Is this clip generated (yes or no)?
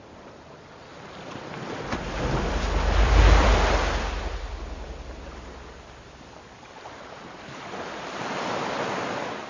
no